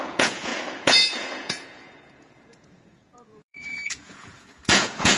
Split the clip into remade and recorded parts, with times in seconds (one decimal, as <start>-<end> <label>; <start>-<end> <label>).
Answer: 0.0-5.2 remade